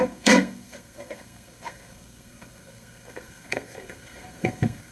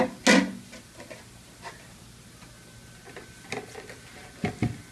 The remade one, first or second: first